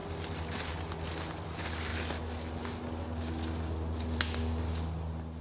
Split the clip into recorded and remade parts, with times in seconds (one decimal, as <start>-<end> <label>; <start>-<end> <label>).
0.0-5.4 recorded